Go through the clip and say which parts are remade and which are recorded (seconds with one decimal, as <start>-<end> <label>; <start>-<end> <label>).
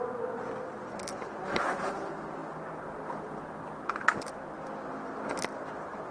0.0-6.1 recorded